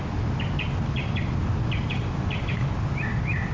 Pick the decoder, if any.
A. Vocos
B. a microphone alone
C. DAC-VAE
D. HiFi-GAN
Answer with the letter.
B